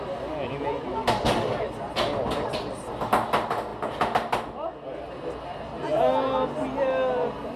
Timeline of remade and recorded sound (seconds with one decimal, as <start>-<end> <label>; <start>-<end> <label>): 0.0-7.6 recorded